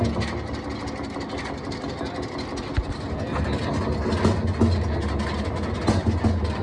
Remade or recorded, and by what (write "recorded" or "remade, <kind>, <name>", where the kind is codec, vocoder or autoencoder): recorded